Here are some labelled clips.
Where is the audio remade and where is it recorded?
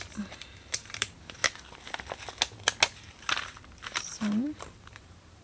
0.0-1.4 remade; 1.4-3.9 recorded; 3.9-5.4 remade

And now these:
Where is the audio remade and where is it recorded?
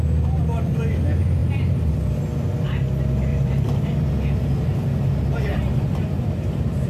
0.0-1.4 recorded; 1.4-2.0 remade; 2.0-3.3 recorded; 3.3-3.9 remade; 3.9-5.5 recorded; 5.5-6.9 remade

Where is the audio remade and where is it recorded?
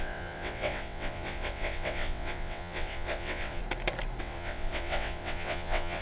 0.0-3.6 remade; 3.6-4.2 recorded; 4.2-6.0 remade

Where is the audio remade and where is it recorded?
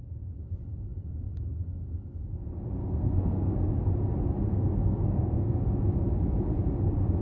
0.0-2.8 recorded; 2.8-3.7 remade; 3.7-4.5 recorded; 4.5-5.6 remade; 5.6-7.2 recorded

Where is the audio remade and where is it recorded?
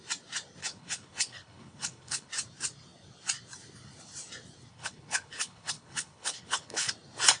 0.0-0.6 recorded; 0.6-2.3 remade; 2.3-4.7 recorded; 4.7-6.9 remade; 6.9-7.4 recorded